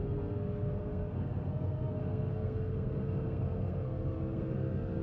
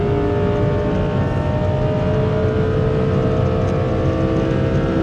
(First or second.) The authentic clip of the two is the second